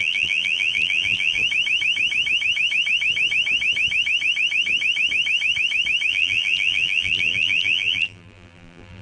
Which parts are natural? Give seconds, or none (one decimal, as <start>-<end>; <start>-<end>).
1.4-6.1